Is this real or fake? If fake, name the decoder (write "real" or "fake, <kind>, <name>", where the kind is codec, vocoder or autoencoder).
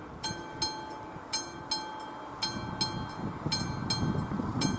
real